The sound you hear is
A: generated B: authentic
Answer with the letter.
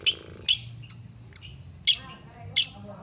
B